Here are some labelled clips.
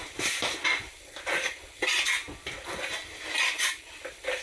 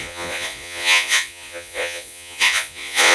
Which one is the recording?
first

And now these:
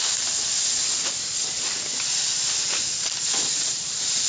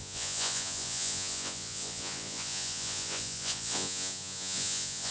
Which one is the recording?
first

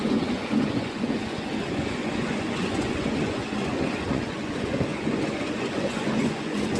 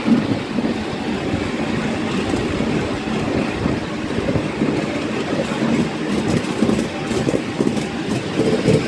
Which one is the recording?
second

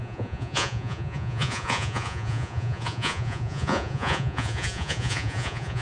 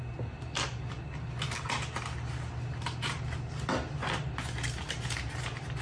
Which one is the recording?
second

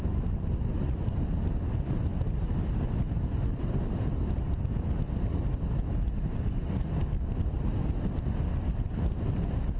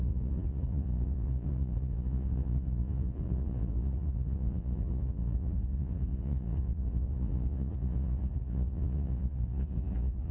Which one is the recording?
first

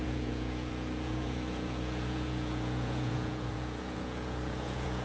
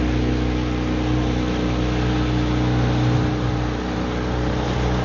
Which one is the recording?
second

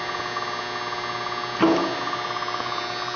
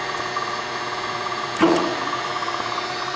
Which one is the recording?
first